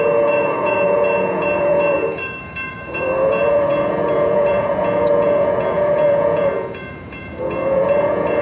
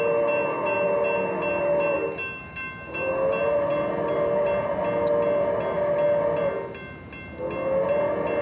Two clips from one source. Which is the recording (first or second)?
second